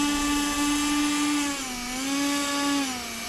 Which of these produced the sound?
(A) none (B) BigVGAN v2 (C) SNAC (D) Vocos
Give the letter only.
A